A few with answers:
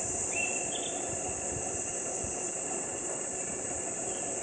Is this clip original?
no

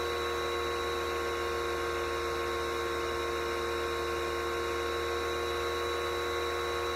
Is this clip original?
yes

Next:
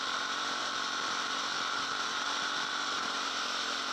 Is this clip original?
no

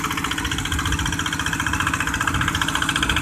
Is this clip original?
yes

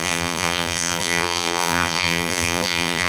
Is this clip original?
no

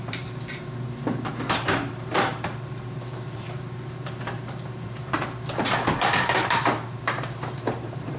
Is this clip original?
no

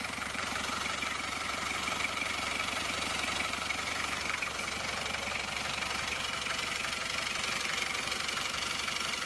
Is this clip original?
no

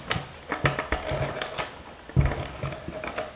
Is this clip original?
yes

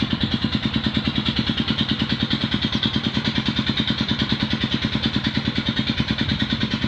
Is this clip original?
no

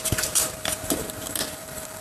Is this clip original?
no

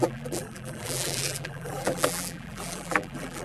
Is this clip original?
no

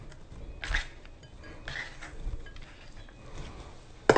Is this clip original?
yes